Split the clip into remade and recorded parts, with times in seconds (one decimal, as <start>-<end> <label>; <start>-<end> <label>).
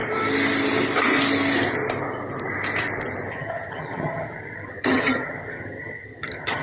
0.0-3.3 recorded; 3.3-6.6 remade